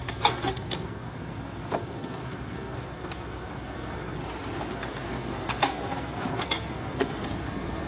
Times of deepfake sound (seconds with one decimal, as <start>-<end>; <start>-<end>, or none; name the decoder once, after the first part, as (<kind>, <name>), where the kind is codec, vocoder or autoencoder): 0.0-4.2 (codec, SNAC); 4.7-7.9